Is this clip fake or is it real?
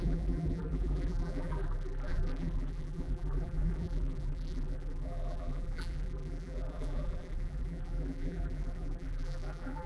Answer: fake